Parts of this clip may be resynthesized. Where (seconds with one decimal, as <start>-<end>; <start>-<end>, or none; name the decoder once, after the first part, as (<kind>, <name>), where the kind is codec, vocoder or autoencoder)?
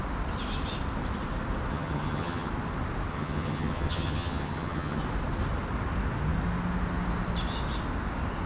1.7-2.5 (vocoder, HiFi-GAN); 3.1-5.0